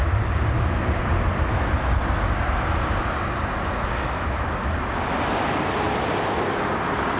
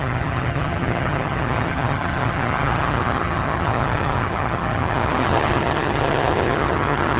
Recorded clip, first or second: first